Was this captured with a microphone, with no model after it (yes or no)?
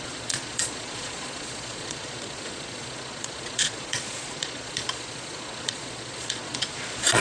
no